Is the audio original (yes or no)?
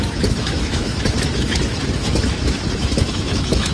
no